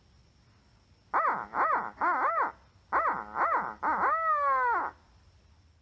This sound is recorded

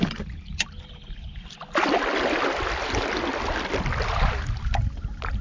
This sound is recorded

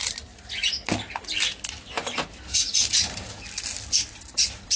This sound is recorded